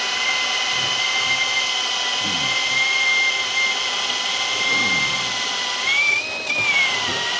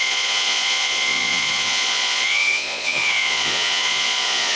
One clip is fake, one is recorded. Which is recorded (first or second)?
first